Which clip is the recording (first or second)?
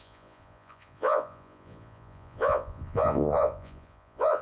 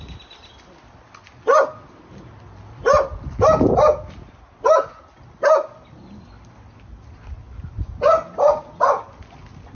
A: second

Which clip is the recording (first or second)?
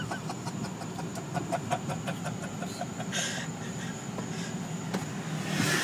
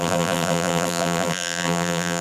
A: first